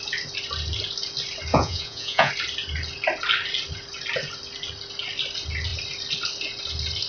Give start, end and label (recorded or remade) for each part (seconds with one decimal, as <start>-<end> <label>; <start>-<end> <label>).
0.0-1.5 recorded; 1.5-2.3 remade; 2.3-7.1 recorded